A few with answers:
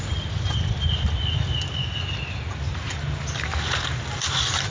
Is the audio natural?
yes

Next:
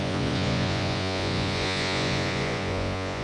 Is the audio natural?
no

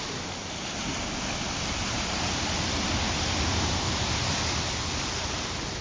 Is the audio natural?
yes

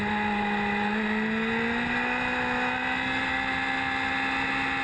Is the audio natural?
yes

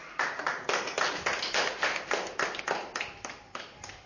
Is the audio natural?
yes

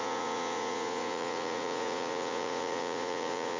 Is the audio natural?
no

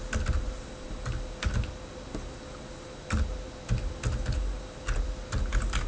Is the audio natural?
yes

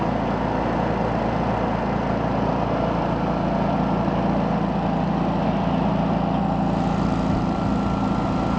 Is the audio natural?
yes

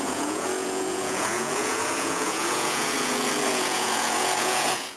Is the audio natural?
no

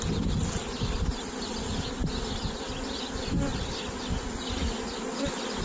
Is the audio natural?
yes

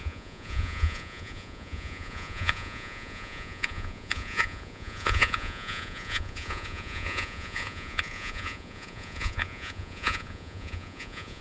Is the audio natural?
no